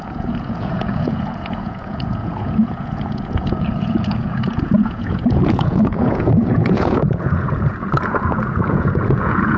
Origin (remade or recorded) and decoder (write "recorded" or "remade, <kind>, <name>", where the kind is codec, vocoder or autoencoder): remade, vocoder, Vocos